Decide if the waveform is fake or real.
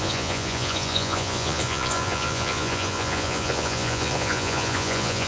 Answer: fake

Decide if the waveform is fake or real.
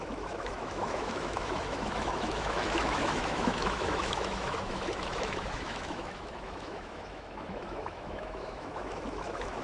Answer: fake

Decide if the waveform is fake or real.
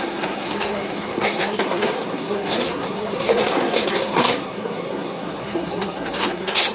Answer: fake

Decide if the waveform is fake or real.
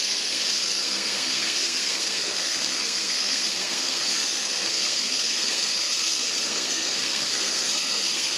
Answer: fake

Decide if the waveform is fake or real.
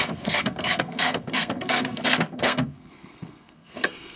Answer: fake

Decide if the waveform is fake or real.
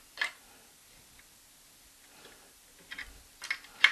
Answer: real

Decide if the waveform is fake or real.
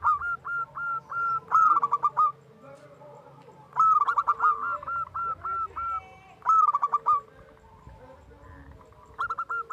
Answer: real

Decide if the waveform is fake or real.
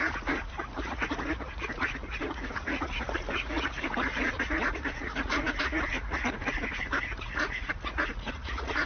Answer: fake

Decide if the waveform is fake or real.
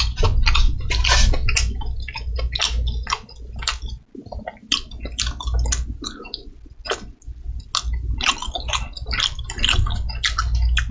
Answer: real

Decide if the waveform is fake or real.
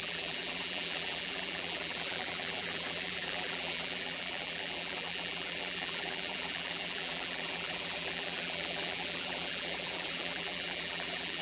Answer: fake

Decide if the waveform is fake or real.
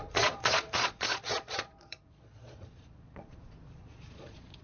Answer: fake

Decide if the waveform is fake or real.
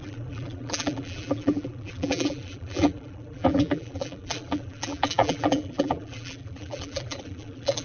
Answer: fake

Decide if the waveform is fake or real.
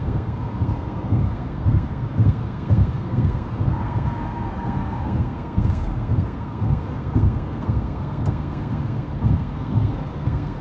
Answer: fake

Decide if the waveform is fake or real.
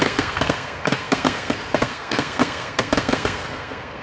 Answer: fake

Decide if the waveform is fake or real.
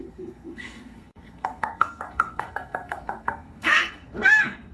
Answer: fake